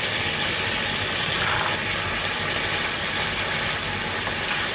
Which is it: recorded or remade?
recorded